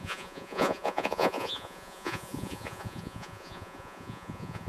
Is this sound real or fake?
fake